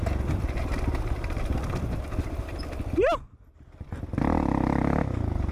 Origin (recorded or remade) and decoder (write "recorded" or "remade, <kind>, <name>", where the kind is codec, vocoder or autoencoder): recorded